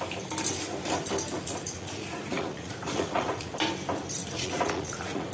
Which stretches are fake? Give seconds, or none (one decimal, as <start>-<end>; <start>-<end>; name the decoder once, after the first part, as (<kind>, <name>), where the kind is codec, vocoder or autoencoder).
1.3-3.5 (vocoder, Vocos); 4.2-5.3